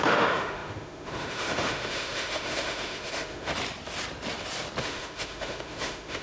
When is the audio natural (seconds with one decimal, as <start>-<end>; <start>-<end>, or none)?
3.5-4.8